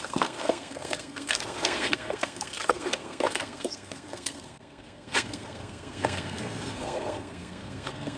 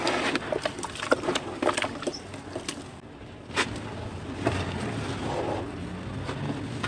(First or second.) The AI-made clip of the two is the first